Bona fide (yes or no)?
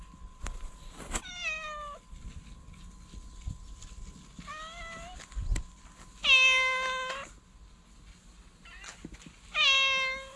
yes